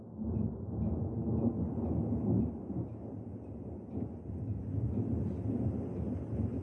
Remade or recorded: recorded